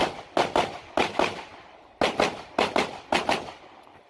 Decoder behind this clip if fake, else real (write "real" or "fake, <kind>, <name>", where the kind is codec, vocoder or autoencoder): real